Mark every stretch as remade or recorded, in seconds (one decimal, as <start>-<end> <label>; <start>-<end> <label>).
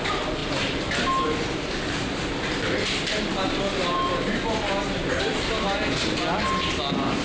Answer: 0.0-7.2 recorded